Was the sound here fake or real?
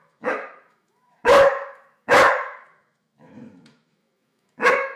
fake